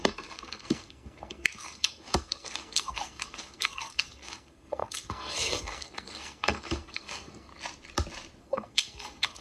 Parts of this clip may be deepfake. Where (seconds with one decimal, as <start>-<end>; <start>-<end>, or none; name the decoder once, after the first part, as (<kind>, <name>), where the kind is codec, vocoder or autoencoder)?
0.0-7.5 (codec, SNAC); 8.4-9.4